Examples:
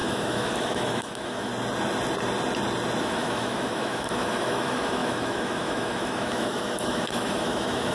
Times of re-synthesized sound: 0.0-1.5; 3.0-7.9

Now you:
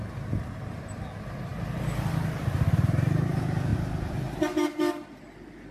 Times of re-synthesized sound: none